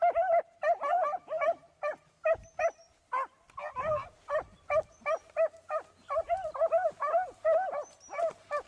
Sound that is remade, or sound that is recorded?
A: recorded